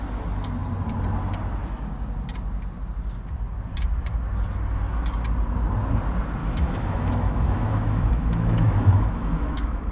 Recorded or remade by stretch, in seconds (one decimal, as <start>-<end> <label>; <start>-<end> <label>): 0.0-6.4 recorded; 6.4-9.9 remade